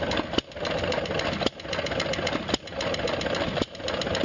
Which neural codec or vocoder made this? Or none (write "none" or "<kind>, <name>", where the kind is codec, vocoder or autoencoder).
none